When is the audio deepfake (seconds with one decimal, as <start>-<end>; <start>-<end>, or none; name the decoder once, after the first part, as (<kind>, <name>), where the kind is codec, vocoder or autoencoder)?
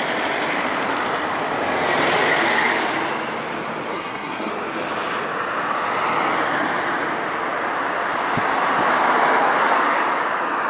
3.9-4.5 (codec, SNAC)